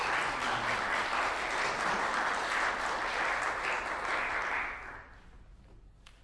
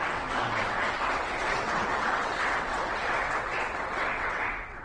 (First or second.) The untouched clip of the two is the first